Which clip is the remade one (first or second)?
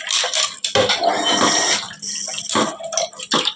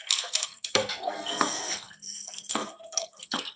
second